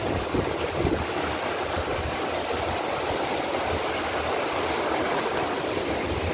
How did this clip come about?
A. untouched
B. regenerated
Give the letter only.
A